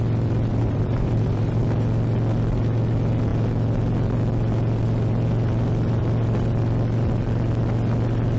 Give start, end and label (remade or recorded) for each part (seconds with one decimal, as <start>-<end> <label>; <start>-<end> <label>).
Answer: 0.0-0.5 recorded; 0.5-1.6 remade; 1.6-8.4 recorded